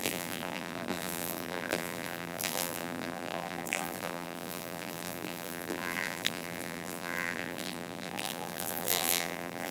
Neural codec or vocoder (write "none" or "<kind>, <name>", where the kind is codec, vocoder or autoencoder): vocoder, BigVGAN v2